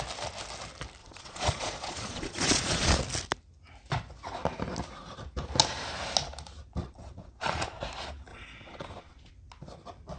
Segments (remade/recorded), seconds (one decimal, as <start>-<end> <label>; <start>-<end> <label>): 0.0-1.0 recorded; 1.0-3.0 remade; 3.0-6.8 recorded; 6.8-7.8 remade; 7.8-8.3 recorded; 8.3-9.3 remade; 9.3-10.2 recorded

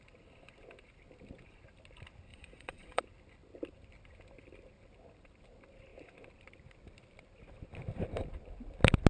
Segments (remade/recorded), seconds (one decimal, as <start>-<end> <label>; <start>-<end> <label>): 0.0-2.3 recorded; 2.3-3.0 remade; 3.0-9.1 recorded

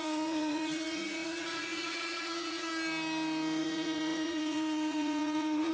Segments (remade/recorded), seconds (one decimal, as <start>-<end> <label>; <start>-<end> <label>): 0.0-2.7 remade; 2.7-3.6 recorded; 3.6-5.7 remade

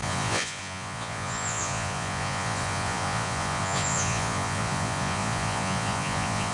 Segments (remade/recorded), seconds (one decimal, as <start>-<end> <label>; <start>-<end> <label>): 0.0-6.5 remade

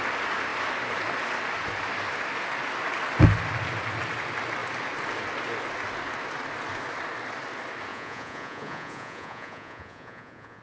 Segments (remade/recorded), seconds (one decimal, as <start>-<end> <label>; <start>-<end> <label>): 0.0-7.9 recorded; 7.9-10.6 remade